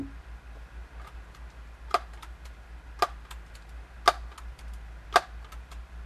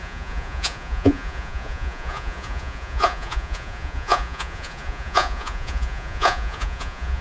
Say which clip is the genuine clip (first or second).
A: first